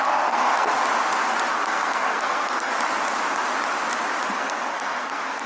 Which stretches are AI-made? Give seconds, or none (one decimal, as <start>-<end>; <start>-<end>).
0.0-0.7; 1.5-2.7; 4.3-5.5

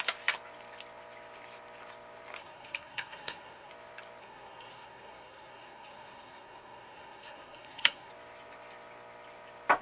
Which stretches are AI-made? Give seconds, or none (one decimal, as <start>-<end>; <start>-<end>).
2.4-3.7; 4.2-8.1

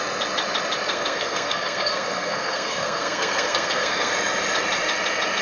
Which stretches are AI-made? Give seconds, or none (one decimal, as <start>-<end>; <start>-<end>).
0.9-4.1

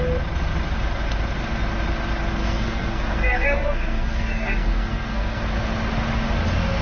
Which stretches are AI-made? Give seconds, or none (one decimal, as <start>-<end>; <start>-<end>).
2.4-5.5

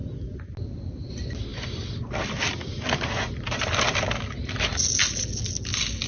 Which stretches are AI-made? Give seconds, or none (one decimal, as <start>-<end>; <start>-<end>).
none

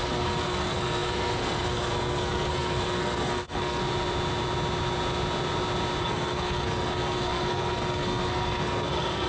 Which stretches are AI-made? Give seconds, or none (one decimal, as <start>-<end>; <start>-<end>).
0.0-3.8; 6.0-9.3

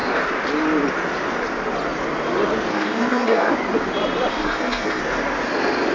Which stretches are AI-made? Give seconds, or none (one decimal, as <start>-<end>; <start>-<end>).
2.7-3.5; 4.3-5.0

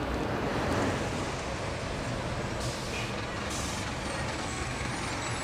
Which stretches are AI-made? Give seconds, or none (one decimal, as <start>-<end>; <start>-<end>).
4.3-4.9